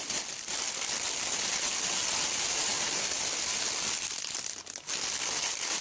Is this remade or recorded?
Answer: recorded